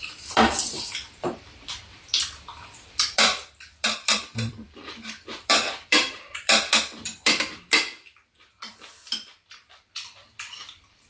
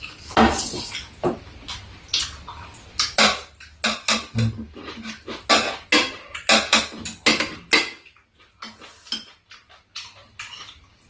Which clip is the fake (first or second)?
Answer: first